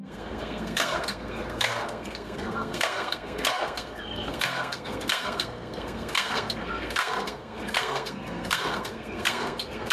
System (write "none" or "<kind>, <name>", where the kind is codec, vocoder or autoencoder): codec, SNAC